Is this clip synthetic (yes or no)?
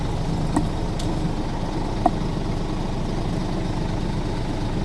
no